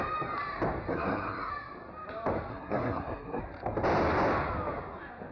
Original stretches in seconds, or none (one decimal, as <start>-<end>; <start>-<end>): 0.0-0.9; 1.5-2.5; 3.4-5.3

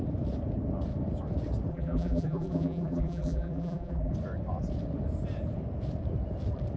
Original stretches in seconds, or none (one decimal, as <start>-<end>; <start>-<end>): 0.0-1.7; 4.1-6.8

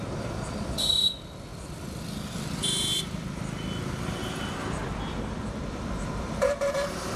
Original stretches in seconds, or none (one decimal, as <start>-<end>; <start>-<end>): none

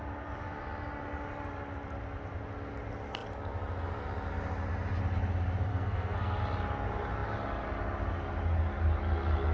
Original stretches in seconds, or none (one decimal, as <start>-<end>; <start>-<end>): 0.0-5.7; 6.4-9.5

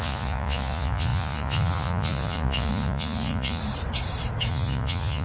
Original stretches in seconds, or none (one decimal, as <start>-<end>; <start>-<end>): 3.6-4.5

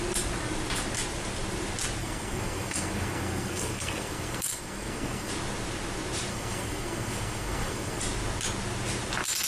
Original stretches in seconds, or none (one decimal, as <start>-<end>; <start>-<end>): 0.0-2.0; 5.3-6.3; 8.0-9.5